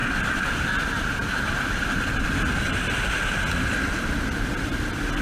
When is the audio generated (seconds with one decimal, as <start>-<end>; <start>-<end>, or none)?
0.0-3.1